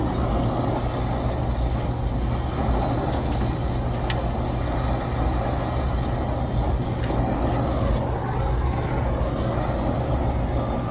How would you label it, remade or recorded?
recorded